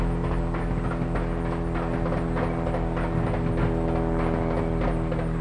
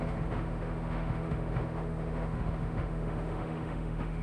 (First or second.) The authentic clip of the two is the first